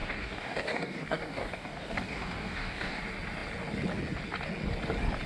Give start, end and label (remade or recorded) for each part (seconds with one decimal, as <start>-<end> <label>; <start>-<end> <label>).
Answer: 0.0-3.0 remade; 3.0-5.3 recorded